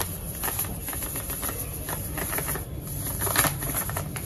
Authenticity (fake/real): real